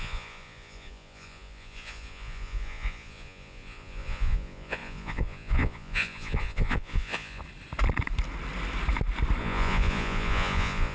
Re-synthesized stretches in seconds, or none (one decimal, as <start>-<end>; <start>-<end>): 0.0-7.4; 9.4-10.9